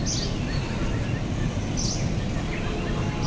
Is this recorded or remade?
recorded